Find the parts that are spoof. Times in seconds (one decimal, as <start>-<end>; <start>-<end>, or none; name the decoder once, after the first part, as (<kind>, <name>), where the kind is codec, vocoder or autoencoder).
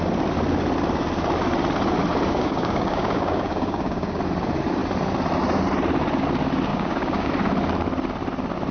2.3-4.2 (codec, DAC); 6.7-7.3